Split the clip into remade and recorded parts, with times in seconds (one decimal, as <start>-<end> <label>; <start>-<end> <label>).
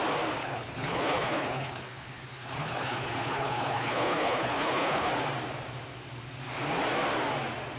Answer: 0.0-0.4 recorded; 0.4-5.1 remade; 5.1-7.8 recorded